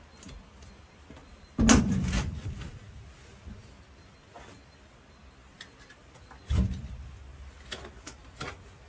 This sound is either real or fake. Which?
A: real